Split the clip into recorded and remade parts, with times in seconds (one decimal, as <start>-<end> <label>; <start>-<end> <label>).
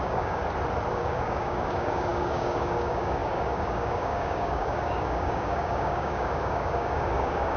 0.0-0.4 remade; 0.4-0.9 recorded; 0.9-7.6 remade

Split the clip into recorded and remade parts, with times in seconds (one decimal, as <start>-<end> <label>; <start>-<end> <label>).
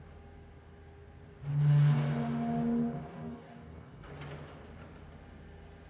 0.0-3.1 recorded; 3.1-4.1 remade; 4.1-5.9 recorded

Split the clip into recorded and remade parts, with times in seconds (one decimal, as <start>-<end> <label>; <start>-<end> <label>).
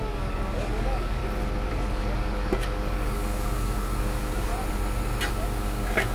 0.0-1.2 remade; 1.2-1.7 recorded; 1.7-4.5 remade; 4.5-5.3 recorded; 5.3-6.1 remade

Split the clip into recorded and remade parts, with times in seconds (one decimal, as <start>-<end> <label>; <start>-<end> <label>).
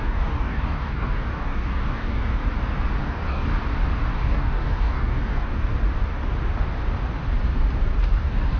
0.0-2.4 remade; 2.4-3.0 recorded; 3.0-3.5 remade; 3.5-4.2 recorded; 4.2-5.6 remade; 5.6-8.0 recorded; 8.0-8.6 remade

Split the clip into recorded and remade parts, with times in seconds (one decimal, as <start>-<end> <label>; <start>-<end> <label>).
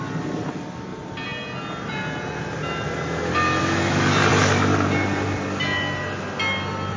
0.0-7.0 recorded